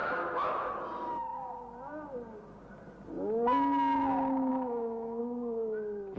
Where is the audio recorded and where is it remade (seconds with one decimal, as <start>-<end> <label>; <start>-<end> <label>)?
0.0-0.7 remade; 0.7-4.5 recorded; 4.5-5.2 remade; 5.2-6.2 recorded